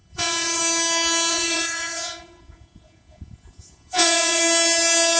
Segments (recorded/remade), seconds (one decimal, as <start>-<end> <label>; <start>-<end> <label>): 0.0-0.6 remade; 0.6-1.3 recorded; 1.3-4.4 remade; 4.4-5.2 recorded